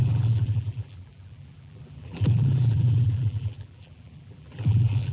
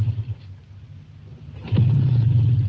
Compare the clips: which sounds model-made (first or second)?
first